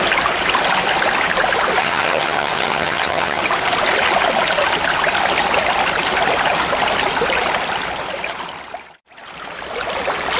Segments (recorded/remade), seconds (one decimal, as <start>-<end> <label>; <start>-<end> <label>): 0.0-1.8 recorded; 1.8-3.4 remade; 3.4-10.4 recorded